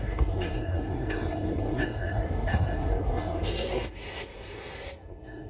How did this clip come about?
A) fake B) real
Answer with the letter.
A